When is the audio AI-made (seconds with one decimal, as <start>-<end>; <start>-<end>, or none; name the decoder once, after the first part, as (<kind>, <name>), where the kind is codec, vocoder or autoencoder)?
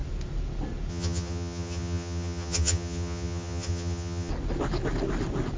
0.9-4.3 (vocoder, HiFi-GAN)